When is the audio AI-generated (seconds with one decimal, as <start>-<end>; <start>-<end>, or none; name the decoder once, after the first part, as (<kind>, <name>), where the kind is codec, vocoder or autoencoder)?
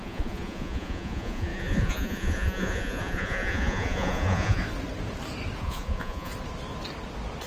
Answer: 0.0-4.6 (vocoder, Vocos); 5.6-6.3